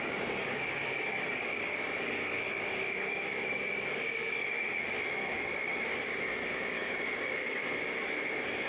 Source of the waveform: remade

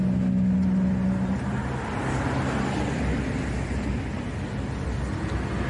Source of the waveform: recorded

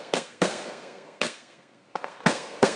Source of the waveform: remade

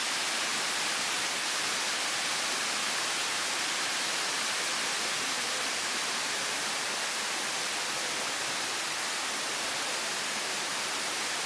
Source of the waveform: recorded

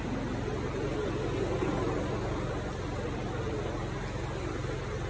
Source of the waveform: recorded